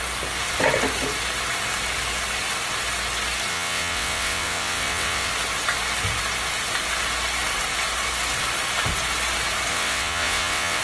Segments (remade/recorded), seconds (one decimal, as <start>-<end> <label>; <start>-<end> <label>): 0.0-3.5 recorded; 3.5-5.3 remade; 5.3-9.7 recorded; 9.7-10.8 remade